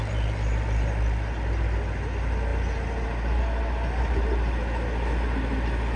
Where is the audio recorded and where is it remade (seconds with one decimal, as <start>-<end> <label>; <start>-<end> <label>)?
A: 0.0-6.0 recorded